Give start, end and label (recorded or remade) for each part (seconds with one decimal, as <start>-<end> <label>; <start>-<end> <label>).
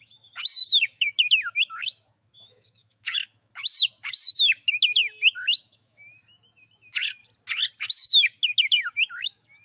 0.0-7.2 remade; 7.2-7.8 recorded; 7.8-9.6 remade